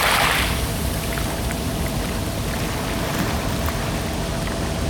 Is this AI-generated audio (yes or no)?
no